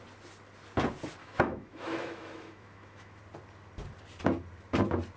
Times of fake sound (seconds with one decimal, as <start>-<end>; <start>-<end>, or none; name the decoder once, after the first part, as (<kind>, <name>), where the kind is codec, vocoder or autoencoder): 1.2-3.2 (autoencoder, DAC-VAE)